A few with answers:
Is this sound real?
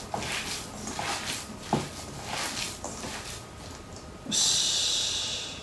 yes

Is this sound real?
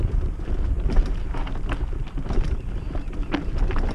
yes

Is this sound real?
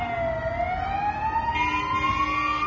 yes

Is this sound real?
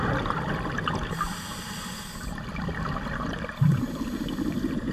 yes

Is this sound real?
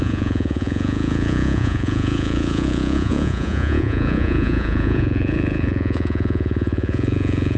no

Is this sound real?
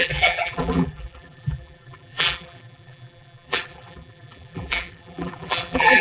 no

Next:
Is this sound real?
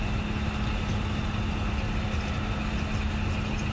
yes